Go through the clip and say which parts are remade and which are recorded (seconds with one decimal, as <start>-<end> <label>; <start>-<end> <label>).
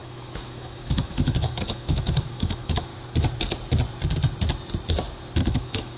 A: 0.0-2.9 remade; 2.9-5.4 recorded; 5.4-6.0 remade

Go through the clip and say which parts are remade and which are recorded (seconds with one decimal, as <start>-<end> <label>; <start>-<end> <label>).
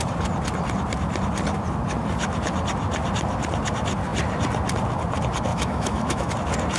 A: 0.0-5.5 recorded; 5.5-6.3 remade; 6.3-6.8 recorded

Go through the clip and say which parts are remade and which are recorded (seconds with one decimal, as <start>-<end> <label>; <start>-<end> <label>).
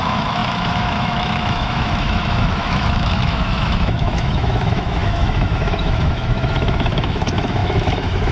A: 0.0-8.3 remade